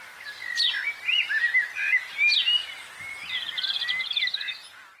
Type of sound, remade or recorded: recorded